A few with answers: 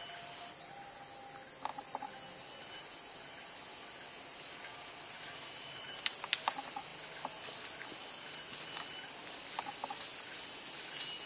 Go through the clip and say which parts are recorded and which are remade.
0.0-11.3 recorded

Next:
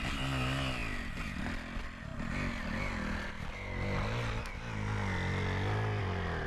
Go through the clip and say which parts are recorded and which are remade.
0.0-6.5 recorded